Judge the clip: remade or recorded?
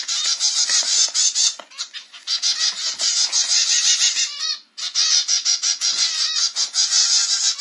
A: remade